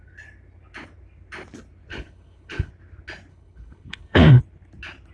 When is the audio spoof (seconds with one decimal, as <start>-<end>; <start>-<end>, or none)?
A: 1.9-2.7; 3.3-4.4